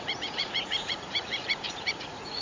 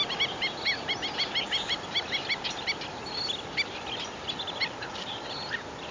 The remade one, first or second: first